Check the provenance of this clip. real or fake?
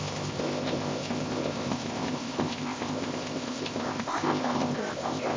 fake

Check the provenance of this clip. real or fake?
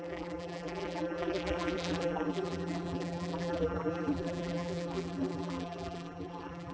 fake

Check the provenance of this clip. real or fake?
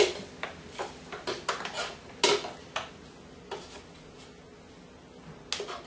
real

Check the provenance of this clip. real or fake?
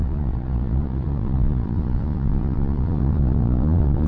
fake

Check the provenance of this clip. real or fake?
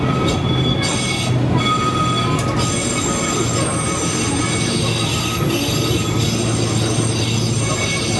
real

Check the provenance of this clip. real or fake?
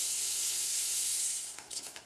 fake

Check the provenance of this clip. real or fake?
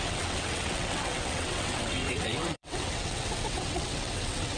fake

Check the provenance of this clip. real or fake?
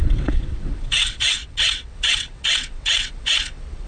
fake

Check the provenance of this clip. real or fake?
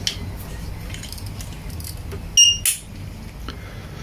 real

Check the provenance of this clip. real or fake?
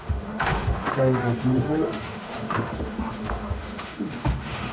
fake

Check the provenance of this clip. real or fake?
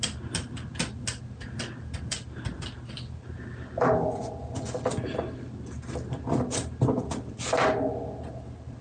real